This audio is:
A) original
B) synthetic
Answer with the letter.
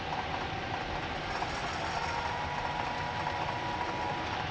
A